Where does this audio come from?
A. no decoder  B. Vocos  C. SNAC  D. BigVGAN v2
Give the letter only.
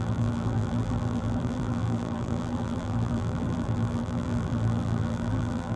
D